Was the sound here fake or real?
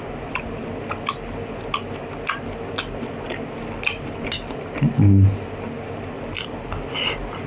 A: real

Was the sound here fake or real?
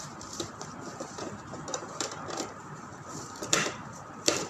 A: fake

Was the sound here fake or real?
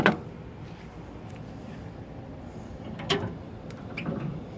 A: fake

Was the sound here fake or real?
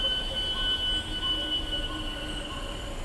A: real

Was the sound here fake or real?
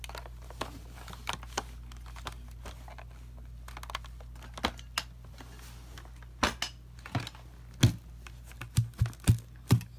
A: real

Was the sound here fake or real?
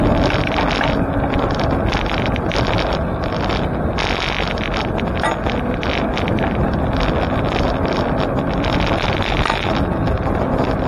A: real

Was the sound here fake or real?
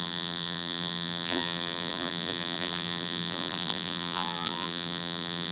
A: fake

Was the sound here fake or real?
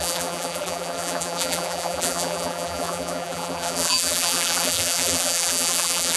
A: fake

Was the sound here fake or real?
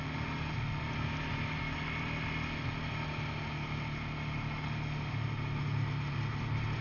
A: real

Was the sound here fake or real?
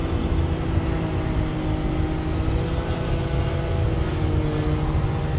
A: real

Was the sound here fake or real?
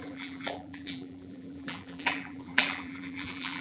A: fake